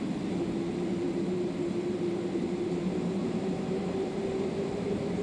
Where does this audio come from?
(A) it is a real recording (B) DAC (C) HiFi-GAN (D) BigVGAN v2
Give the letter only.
D